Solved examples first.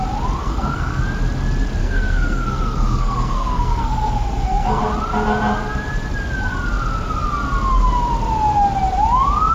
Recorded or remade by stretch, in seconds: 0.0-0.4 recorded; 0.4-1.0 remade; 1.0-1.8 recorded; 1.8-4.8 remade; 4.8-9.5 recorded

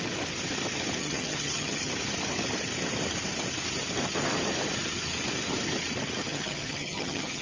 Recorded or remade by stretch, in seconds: 0.0-1.0 recorded; 1.0-1.9 remade; 1.9-6.3 recorded; 6.3-7.4 remade

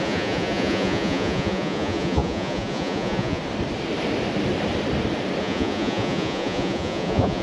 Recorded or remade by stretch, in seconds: 0.0-3.4 remade; 3.4-5.4 recorded; 5.4-7.4 remade

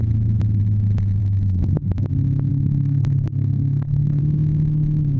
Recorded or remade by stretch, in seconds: 0.0-1.2 recorded; 1.2-2.1 remade; 2.1-2.5 recorded; 2.5-4.2 remade; 4.2-5.2 recorded